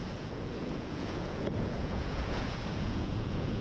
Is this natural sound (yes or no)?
no